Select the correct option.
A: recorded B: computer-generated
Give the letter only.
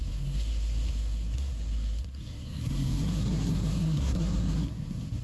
B